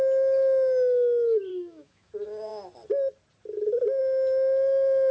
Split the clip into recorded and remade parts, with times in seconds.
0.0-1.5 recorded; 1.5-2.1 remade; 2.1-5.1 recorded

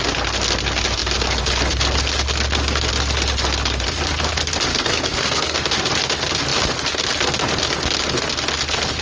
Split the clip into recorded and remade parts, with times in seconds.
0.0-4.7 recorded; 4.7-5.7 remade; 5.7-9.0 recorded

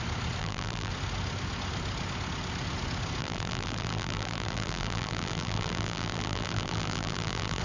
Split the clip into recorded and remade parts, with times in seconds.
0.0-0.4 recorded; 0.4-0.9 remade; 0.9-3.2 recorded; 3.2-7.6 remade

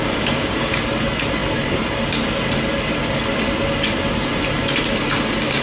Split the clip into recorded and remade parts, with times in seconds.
0.0-0.8 remade; 0.8-5.6 recorded